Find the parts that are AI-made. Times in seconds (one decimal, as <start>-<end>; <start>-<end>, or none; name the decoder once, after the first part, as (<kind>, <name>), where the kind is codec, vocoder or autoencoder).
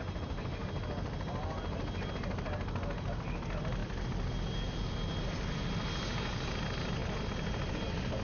3.8-4.3 (vocoder, BigVGAN v2); 7.0-7.7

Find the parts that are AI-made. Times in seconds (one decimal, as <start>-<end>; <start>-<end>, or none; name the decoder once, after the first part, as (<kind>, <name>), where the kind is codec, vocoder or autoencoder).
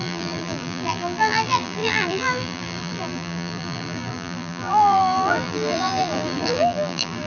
0.0-7.3 (vocoder, BigVGAN v2)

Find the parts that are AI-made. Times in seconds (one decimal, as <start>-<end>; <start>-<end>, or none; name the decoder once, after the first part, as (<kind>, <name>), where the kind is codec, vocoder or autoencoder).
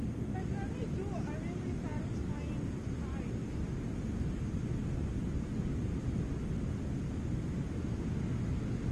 none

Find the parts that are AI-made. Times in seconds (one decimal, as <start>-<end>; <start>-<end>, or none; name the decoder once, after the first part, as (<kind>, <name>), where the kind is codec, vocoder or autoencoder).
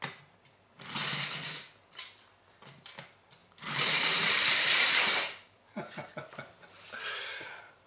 3.4-6.1 (vocoder, BigVGAN v2)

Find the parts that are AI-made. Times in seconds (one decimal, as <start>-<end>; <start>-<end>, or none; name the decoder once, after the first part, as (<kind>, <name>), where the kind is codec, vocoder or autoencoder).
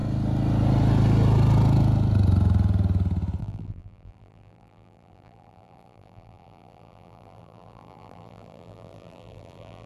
3.4-9.9 (vocoder, BigVGAN v2)